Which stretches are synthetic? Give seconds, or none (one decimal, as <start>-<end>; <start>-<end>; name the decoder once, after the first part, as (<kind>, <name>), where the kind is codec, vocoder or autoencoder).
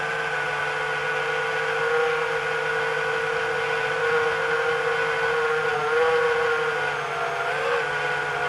none